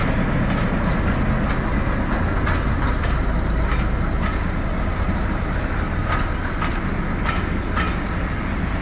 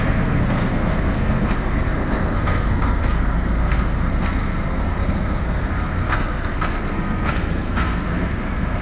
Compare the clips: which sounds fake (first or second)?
second